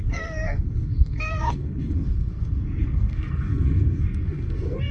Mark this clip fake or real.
fake